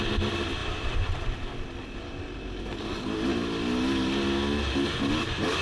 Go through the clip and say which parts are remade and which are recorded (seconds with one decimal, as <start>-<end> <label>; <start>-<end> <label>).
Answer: 0.0-5.6 recorded